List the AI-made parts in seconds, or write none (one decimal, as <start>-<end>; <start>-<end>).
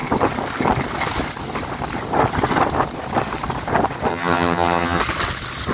4.1-5.0